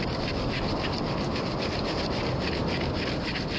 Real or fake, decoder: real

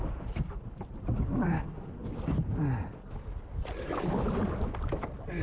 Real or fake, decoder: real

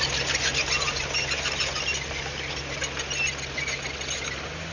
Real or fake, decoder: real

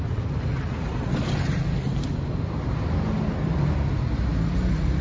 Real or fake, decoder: real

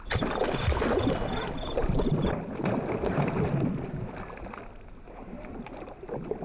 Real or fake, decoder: real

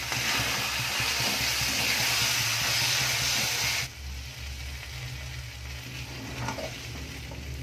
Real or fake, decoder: real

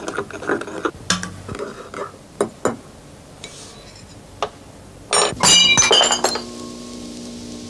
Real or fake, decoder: real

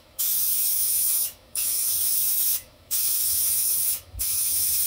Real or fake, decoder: fake, autoencoder, DAC-VAE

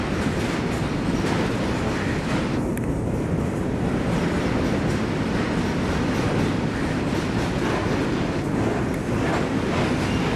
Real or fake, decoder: real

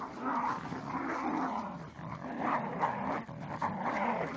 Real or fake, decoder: real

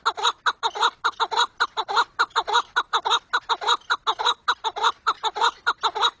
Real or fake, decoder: real